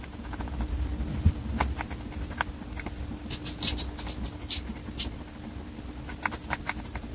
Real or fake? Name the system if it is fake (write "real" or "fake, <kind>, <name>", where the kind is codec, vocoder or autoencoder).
real